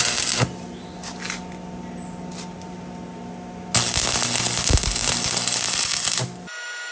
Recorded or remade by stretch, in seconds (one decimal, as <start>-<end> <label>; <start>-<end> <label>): 0.0-6.9 recorded